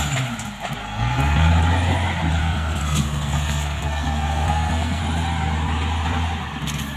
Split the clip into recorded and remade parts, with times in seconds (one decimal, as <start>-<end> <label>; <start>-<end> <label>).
0.0-0.8 recorded; 0.8-1.5 remade; 1.5-2.4 recorded; 2.4-5.0 remade; 5.0-7.0 recorded